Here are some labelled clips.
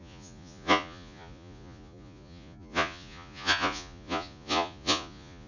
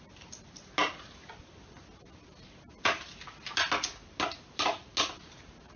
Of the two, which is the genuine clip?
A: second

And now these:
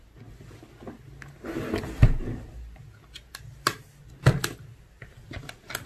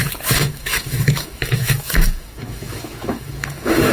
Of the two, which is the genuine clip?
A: first